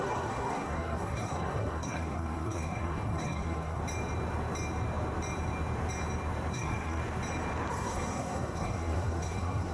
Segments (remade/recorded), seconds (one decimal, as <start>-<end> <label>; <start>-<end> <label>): 0.0-3.8 remade; 3.8-6.5 recorded; 6.5-7.0 remade; 7.0-7.7 recorded; 7.7-9.7 remade